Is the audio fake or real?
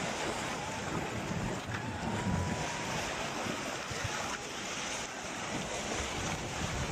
real